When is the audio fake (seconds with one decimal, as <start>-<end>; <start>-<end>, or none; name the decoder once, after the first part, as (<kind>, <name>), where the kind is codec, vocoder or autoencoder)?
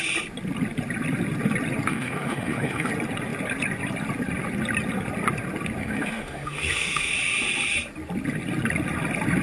1.9-2.9 (autoencoder, DAC-VAE); 5.8-7.1